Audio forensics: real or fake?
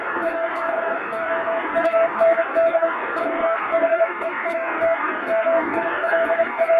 fake